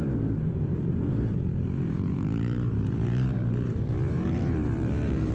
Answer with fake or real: fake